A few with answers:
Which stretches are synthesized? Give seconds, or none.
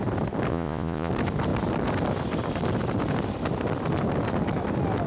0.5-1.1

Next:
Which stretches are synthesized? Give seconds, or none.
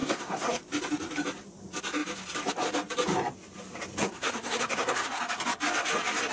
0.0-0.6; 4.0-5.2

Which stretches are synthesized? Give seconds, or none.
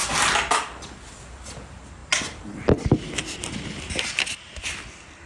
none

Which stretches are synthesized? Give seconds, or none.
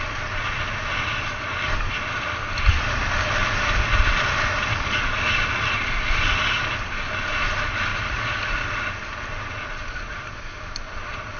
7.9-8.6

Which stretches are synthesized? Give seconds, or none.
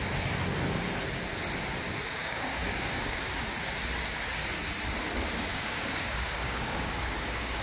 2.2-3.2; 5.5-7.6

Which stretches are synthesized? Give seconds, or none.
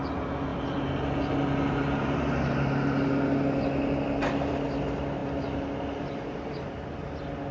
none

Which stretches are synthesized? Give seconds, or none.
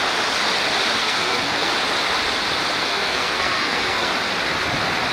1.0-1.7; 2.8-4.1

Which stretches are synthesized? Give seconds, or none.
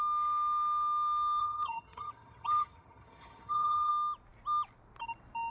1.4-3.9